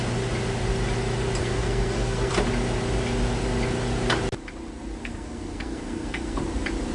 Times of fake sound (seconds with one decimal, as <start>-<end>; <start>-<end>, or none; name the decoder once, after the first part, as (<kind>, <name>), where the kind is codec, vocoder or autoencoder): 1.4-2.3 (codec, SNAC); 5.0-6.4